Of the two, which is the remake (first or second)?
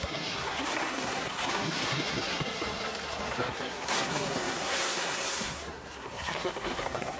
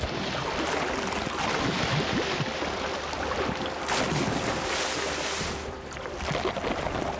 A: first